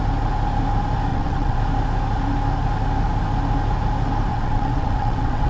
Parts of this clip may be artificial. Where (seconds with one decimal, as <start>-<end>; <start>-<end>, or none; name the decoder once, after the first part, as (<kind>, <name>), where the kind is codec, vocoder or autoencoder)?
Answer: 1.1-1.6 (vocoder, WaveNeXt); 4.3-5.5

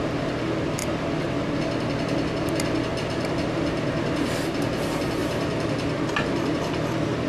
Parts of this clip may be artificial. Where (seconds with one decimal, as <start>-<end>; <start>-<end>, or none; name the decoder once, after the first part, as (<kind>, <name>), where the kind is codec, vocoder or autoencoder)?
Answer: 2.9-3.7 (vocoder, BigVGAN v2); 5.2-6.7

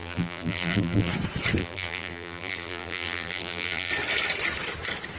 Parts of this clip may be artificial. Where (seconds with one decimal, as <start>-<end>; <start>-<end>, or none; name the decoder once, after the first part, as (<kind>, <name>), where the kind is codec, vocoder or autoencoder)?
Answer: 0.0-1.1 (vocoder, BigVGAN v2); 1.6-3.9

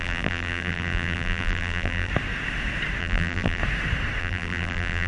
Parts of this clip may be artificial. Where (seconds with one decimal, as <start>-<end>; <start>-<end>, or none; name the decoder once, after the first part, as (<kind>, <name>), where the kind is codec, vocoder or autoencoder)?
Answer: 0.0-2.1 (vocoder, BigVGAN v2); 3.0-3.6; 4.2-5.1

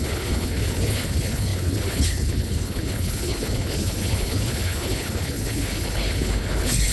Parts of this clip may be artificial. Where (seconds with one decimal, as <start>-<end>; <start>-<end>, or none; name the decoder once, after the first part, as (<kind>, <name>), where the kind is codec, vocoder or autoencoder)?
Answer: 0.0-6.9 (codec, HILCodec)

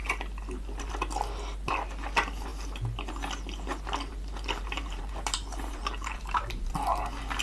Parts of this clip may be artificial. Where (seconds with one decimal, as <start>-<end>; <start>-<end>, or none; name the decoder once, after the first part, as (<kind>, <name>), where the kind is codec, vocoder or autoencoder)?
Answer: 4.1-6.7 (vocoder, BigVGAN v2)

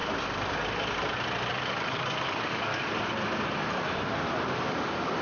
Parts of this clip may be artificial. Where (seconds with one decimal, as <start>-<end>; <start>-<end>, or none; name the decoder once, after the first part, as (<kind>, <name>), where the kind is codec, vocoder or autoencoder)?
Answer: 1.5-2.7 (codec, DAC); 4.7-5.2

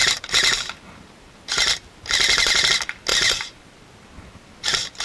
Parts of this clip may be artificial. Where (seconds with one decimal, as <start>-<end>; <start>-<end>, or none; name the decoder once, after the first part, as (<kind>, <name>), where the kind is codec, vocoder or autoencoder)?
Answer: 0.0-2.7 (vocoder, BigVGAN v2); 3.1-3.6